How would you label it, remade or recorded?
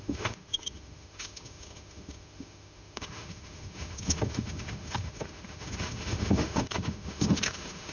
remade